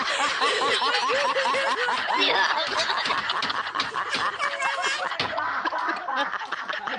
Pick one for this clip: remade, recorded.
recorded